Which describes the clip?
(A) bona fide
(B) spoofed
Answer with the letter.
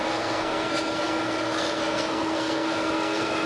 B